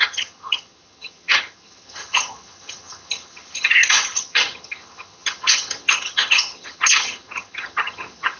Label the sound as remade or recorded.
remade